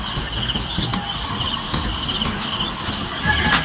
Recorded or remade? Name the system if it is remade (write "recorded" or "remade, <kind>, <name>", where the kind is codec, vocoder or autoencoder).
recorded